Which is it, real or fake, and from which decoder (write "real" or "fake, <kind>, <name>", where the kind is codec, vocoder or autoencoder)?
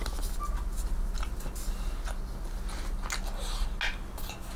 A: real